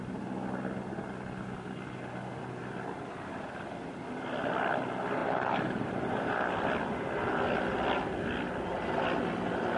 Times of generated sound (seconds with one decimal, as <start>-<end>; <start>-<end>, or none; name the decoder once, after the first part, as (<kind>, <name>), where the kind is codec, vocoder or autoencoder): 5.2-6.3 (vocoder, BigVGAN v2)